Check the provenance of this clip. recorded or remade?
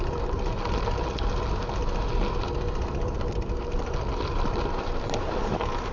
recorded